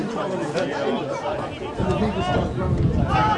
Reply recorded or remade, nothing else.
recorded